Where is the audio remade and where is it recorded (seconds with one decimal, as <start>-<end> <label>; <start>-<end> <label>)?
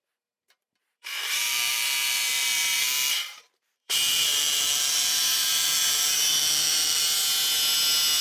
0.0-7.0 remade; 7.0-8.2 recorded